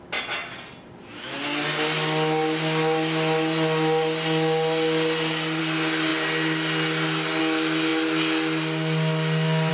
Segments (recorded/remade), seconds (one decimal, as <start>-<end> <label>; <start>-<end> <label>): 0.0-9.7 recorded

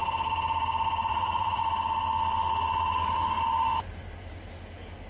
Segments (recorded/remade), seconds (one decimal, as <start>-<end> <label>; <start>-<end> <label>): 0.0-1.1 recorded; 1.1-1.6 remade; 1.6-5.1 recorded

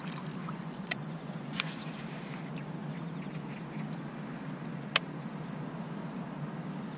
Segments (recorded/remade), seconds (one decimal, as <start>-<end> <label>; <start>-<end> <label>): 0.0-0.4 recorded; 0.4-2.0 remade; 2.0-7.0 recorded

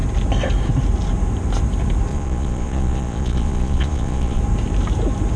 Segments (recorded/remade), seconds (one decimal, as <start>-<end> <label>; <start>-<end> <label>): 0.0-2.1 recorded; 2.1-4.4 remade; 4.4-5.4 recorded

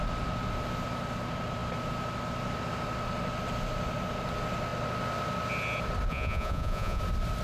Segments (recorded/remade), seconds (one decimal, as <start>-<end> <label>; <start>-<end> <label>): 0.0-6.1 recorded; 6.1-7.0 remade; 7.0-7.4 recorded